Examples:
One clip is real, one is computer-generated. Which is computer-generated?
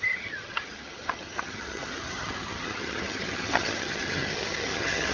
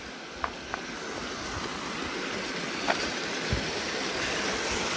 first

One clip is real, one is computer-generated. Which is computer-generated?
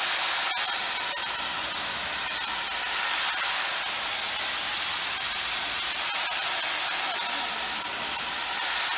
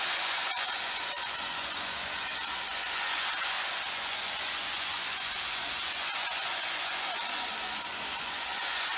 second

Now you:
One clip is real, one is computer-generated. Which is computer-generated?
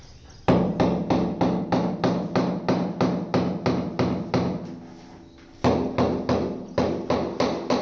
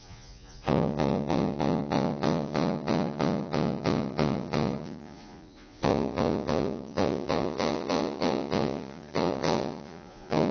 second